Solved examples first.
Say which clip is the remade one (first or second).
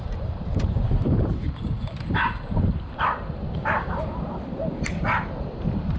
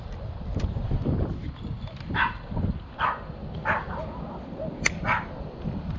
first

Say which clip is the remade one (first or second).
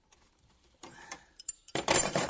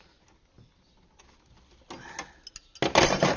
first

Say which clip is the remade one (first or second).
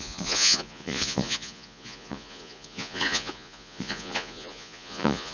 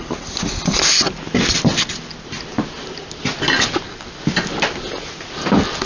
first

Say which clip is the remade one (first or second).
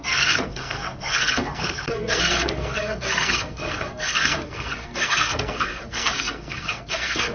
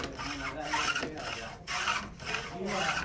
first